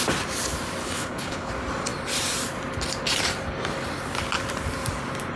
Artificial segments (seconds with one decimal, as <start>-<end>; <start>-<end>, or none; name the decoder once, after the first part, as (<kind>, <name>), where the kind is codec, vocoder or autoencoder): 0.8-1.5 (codec, HILCodec)